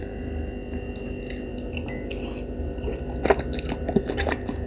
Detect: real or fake real